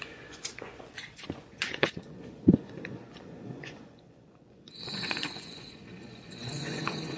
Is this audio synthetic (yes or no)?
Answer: yes